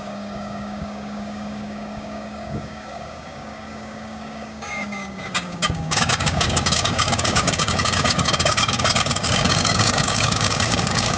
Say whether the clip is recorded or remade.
remade